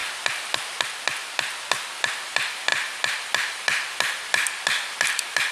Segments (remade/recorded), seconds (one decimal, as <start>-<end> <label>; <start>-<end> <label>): 0.0-5.5 recorded